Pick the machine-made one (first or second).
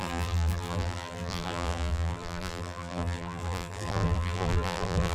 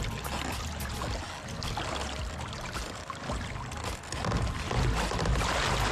first